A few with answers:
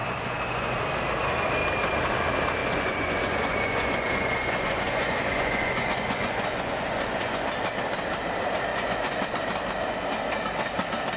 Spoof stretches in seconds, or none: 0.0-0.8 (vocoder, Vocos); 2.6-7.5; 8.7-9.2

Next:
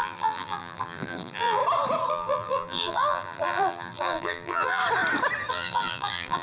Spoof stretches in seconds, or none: 0.0-1.6 (vocoder, BigVGAN v2); 2.1-4.8; 5.5-6.4